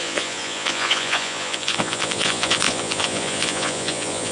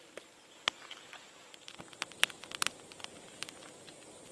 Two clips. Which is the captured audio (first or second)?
second